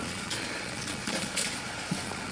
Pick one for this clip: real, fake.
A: fake